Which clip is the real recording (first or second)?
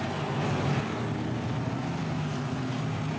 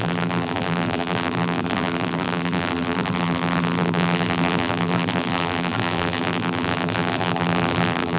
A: first